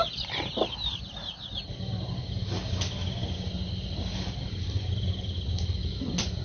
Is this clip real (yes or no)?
yes